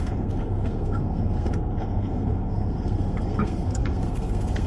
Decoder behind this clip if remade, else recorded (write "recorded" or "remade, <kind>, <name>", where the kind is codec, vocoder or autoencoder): remade, codec, SNAC